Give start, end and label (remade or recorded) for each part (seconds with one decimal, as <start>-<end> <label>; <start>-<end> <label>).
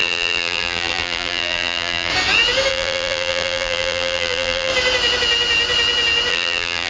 0.0-2.1 remade; 2.1-2.7 recorded; 2.7-4.7 remade; 4.7-6.3 recorded; 6.3-6.9 remade